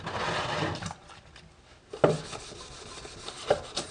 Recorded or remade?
recorded